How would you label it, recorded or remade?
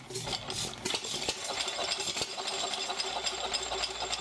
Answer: recorded